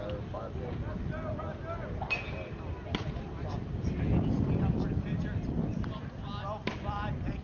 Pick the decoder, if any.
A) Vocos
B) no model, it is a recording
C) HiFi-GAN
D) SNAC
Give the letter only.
B